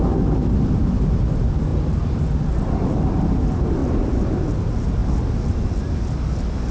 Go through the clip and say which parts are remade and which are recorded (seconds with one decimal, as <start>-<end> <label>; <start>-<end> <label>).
0.0-6.7 recorded